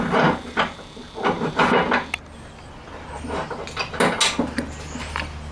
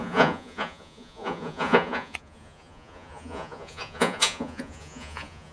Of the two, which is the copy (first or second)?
second